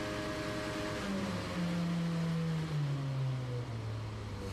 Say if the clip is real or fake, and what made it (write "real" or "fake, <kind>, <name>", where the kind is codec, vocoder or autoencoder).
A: real